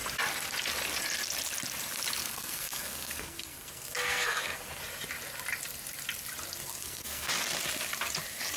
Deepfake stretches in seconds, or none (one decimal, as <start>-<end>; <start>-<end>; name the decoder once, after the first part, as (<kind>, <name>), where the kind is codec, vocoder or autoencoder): 2.2-4.8 (codec, SNAC); 6.6-7.3